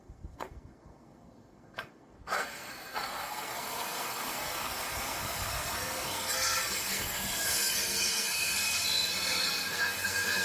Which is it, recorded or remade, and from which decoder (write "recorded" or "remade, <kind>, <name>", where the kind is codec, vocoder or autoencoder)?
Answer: remade, codec, SNAC